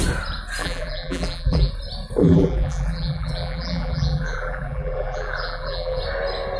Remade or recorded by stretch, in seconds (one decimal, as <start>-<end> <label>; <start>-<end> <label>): 0.0-0.6 recorded; 0.6-1.7 remade; 1.7-2.2 recorded; 2.2-6.0 remade; 6.0-6.6 recorded